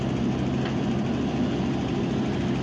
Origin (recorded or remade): recorded